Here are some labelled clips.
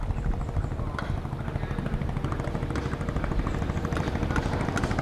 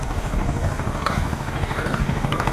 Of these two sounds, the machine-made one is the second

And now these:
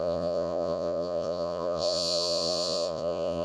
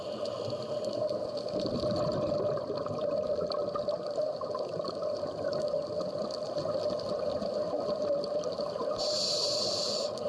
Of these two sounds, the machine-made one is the first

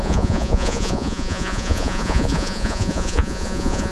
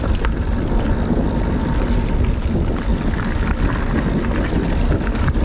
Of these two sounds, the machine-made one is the first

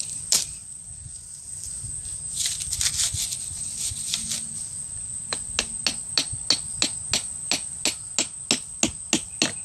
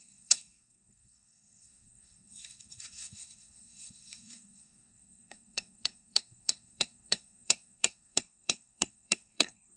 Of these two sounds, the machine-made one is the second